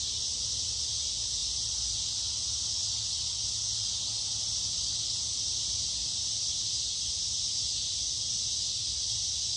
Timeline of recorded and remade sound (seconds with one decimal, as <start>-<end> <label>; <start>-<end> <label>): 0.0-9.6 recorded